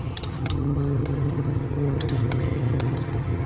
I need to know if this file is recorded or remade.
remade